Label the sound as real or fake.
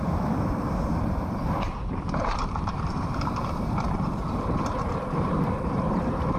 fake